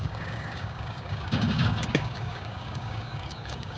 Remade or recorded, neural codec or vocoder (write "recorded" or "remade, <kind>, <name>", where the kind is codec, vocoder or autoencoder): remade, codec, DAC